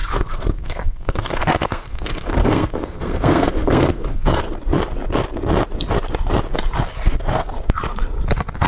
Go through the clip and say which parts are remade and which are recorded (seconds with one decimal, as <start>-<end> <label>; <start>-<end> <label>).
0.0-4.5 remade; 4.5-8.7 recorded